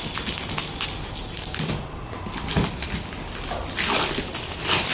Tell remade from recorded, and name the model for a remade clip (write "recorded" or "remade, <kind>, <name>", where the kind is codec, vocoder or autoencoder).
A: recorded